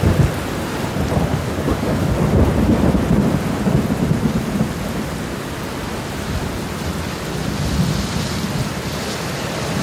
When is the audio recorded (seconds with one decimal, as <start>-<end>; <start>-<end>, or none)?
0.0-1.3; 2.1-9.8